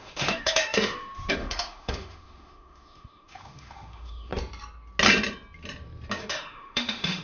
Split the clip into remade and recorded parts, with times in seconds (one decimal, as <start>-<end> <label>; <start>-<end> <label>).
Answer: 0.0-4.3 remade; 4.3-6.3 recorded; 6.3-7.2 remade